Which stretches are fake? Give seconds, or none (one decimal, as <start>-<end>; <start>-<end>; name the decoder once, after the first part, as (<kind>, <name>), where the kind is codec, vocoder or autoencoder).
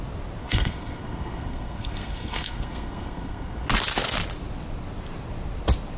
0.4-3.7 (codec, SNAC)